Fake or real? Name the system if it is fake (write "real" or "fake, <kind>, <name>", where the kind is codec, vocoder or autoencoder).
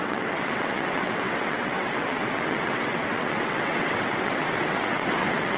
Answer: fake, vocoder, WaveNeXt